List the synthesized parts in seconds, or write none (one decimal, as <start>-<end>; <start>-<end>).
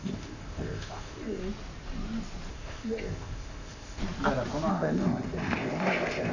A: 0.0-1.4; 2.5-4.0; 4.7-6.3